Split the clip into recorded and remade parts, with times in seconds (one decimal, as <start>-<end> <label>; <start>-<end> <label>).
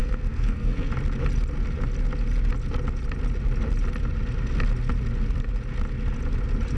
0.0-0.9 remade; 0.9-6.8 recorded